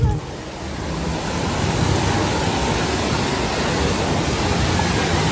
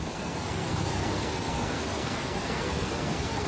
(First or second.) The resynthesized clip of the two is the second